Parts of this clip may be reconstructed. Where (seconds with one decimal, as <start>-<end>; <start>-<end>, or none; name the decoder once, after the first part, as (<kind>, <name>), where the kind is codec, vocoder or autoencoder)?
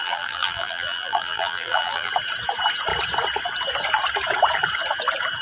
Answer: 0.0-2.1 (vocoder, BigVGAN v2)